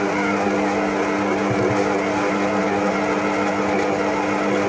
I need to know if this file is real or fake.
real